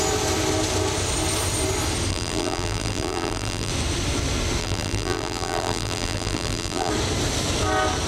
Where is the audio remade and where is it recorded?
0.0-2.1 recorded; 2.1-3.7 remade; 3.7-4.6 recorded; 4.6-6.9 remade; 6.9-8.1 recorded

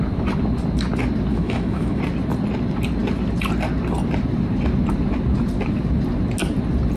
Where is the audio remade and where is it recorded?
0.0-1.3 recorded; 1.3-2.0 remade; 2.0-7.0 recorded